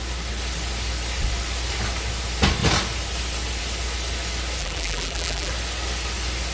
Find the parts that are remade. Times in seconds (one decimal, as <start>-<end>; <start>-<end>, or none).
4.6-5.5